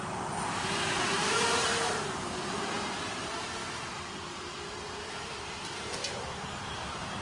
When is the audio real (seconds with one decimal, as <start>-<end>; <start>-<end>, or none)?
none